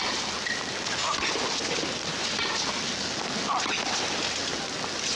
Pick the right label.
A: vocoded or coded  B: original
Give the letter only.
B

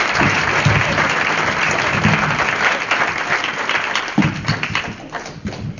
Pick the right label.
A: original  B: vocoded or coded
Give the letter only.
A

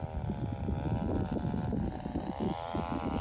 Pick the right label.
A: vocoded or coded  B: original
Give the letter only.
B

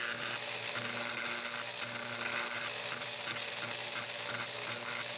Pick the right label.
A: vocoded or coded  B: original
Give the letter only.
B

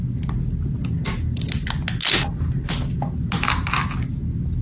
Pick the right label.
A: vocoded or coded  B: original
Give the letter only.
B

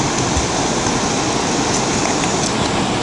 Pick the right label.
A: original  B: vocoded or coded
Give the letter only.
A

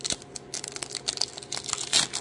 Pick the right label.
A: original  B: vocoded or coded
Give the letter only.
A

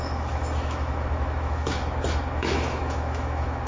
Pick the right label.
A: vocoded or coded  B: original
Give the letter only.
A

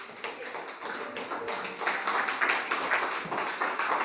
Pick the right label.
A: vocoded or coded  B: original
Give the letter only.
B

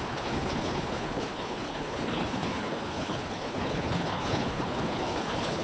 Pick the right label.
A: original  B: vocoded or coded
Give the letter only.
B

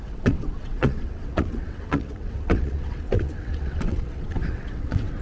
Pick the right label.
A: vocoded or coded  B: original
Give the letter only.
A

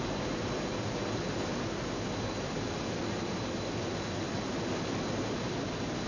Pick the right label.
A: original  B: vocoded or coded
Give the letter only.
A